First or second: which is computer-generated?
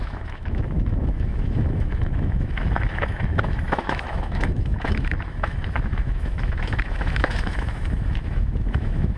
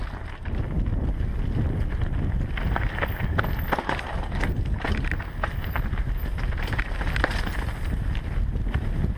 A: first